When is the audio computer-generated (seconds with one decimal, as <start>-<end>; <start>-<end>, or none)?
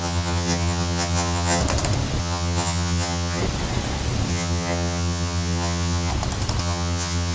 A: 0.0-1.6; 2.2-3.4; 4.3-6.1; 6.6-7.3